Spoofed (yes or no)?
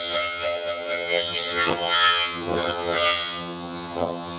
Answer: yes